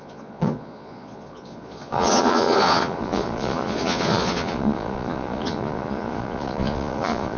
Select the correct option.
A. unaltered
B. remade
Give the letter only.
B